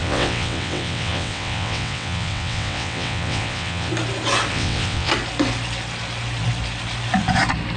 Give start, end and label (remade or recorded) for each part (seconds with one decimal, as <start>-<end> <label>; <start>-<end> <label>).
0.0-3.9 remade; 3.9-4.5 recorded; 4.5-5.1 remade; 5.1-7.8 recorded

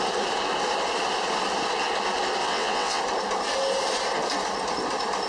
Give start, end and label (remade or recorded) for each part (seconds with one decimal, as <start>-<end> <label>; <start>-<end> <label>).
0.0-2.4 recorded; 2.4-3.0 remade; 3.0-5.3 recorded